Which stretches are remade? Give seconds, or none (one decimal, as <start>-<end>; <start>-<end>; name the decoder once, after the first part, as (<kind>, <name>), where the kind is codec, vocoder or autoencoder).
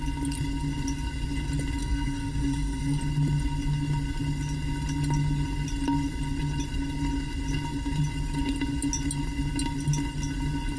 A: 1.8-3.0 (codec, SNAC)